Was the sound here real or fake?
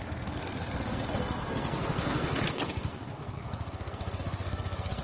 fake